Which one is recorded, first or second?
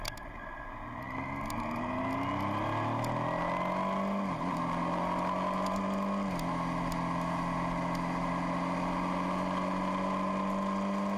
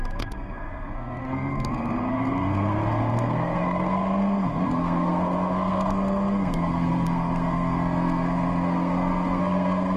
first